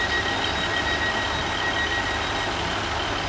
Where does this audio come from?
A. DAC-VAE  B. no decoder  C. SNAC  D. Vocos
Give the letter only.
B